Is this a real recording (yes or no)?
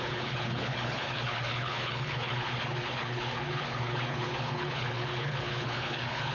no